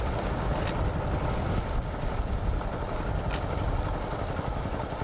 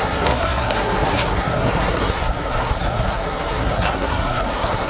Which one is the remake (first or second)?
second